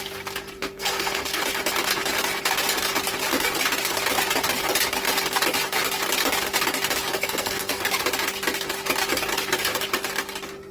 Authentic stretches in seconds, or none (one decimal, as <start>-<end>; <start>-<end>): 0.0-0.6; 1.4-7.1; 8.0-10.7